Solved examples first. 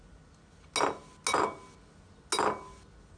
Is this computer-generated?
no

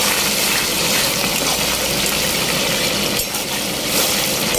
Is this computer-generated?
no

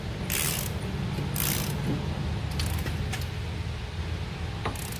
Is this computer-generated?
no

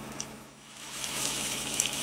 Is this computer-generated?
yes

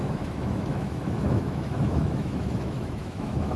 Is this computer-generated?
yes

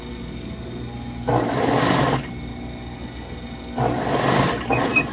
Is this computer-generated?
no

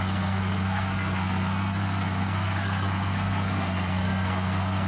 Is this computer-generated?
yes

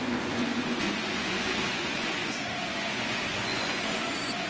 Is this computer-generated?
yes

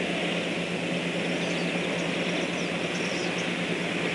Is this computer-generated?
no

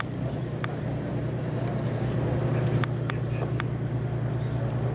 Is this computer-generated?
no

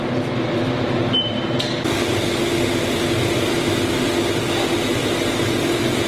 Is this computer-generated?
no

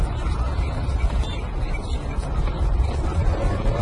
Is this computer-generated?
no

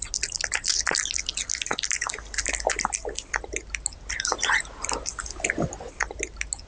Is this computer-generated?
no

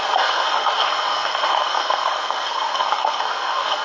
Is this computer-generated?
yes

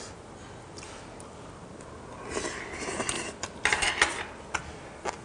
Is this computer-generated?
no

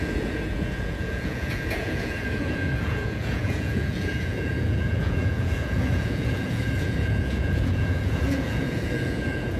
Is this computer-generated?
yes